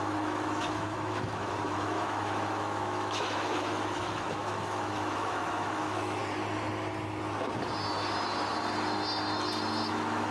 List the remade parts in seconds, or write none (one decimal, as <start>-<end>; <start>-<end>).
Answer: 0.0-6.2; 9.9-10.3